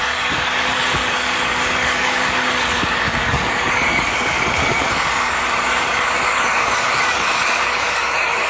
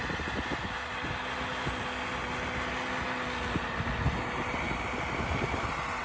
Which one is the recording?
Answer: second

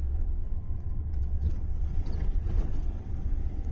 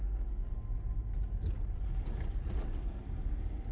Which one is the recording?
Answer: second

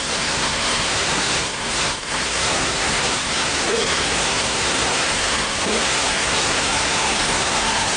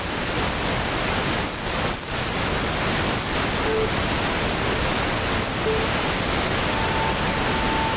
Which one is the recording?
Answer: second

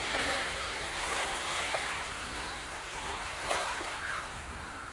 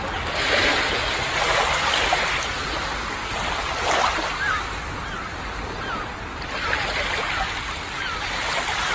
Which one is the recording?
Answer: second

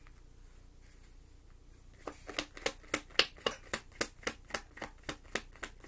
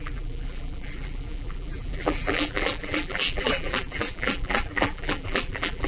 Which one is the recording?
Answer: first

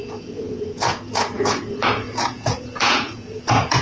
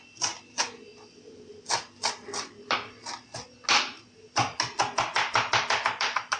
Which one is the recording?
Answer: second